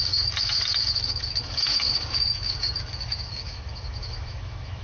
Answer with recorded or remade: remade